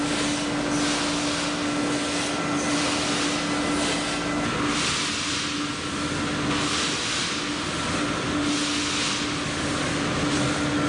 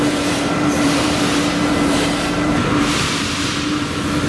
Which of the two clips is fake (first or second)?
second